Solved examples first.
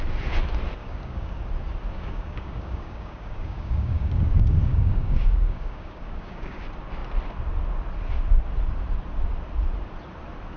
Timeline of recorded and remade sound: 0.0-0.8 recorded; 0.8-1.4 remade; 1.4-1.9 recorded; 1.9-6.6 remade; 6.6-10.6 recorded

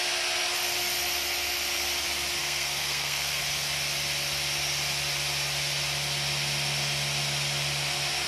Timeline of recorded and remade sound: 0.0-2.4 recorded; 2.4-3.4 remade; 3.4-8.3 recorded